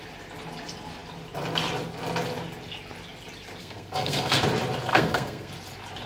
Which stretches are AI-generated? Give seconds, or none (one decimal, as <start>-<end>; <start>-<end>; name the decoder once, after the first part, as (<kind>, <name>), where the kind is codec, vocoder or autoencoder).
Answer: 3.6-4.4 (codec, SNAC); 4.9-5.5